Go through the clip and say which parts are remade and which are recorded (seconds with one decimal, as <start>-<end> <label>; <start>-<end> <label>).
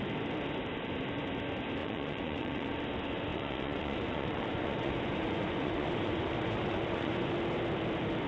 0.0-1.8 recorded; 1.8-2.8 remade; 2.8-3.3 recorded; 3.3-7.3 remade; 7.3-8.3 recorded